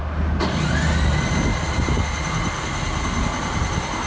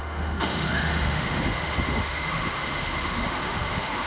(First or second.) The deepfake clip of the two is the second